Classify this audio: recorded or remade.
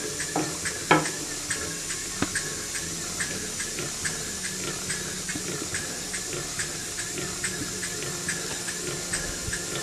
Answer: recorded